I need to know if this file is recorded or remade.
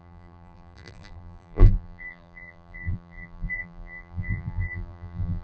remade